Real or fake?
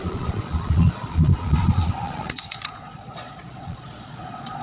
fake